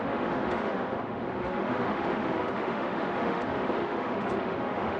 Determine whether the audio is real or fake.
fake